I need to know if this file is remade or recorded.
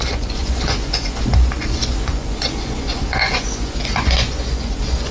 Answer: remade